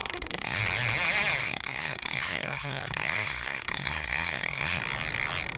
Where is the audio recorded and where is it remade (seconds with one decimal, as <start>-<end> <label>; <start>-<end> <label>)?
0.0-0.6 remade; 0.6-1.4 recorded; 1.4-4.8 remade; 4.8-5.6 recorded